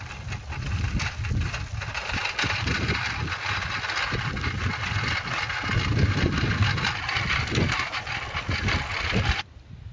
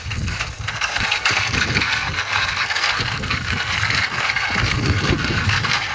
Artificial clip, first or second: second